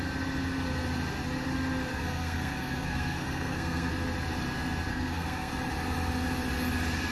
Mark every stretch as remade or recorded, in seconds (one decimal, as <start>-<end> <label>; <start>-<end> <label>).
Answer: 0.0-1.9 recorded; 1.9-3.9 remade; 3.9-4.9 recorded; 4.9-5.5 remade; 5.5-7.1 recorded